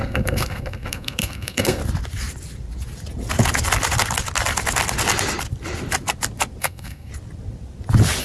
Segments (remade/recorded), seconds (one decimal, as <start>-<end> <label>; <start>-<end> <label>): 0.0-1.8 remade; 1.8-6.6 recorded; 6.6-7.1 remade; 7.1-8.2 recorded